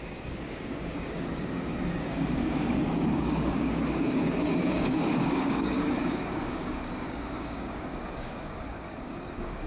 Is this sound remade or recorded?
remade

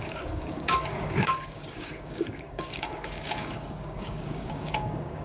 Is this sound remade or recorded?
remade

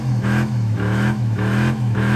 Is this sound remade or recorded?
remade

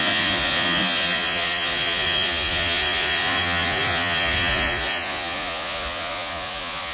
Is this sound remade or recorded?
remade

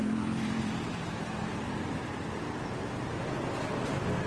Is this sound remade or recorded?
remade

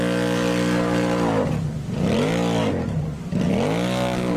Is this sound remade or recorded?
recorded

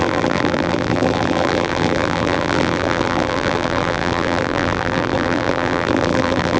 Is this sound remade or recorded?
remade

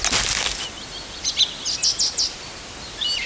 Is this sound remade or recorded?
recorded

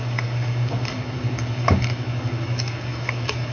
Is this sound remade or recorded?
remade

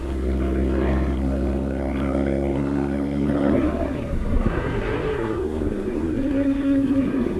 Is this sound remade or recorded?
remade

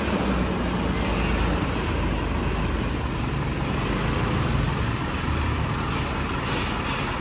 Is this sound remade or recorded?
recorded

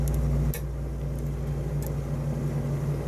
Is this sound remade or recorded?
recorded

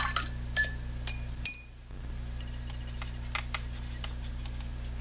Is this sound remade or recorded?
recorded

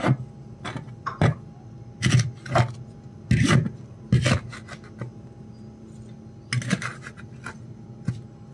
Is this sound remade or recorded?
recorded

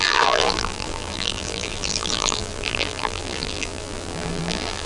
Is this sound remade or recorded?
remade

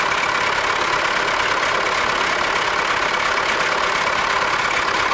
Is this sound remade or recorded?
recorded